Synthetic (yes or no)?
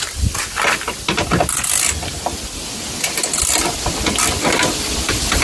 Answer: no